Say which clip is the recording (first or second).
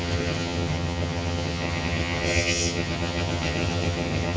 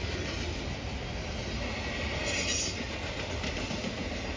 second